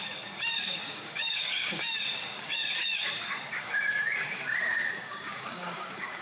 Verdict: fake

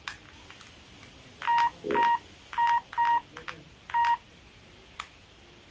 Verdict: real